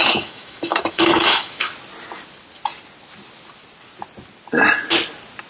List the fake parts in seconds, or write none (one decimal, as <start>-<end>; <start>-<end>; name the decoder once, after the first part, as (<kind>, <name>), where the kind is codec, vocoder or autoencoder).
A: 0.0-1.7 (autoencoder, DAC-VAE)